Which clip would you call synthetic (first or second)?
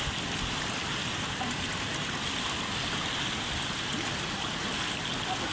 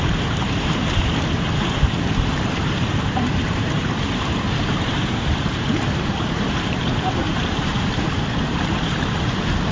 second